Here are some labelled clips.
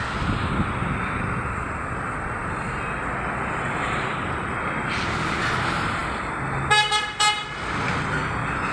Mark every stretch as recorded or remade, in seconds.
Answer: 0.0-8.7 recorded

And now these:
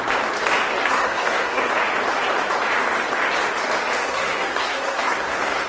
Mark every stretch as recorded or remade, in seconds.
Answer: 0.0-0.8 recorded; 0.8-1.7 remade; 1.7-4.0 recorded; 4.0-5.7 remade

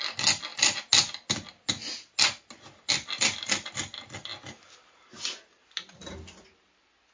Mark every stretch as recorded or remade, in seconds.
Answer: 0.0-7.1 recorded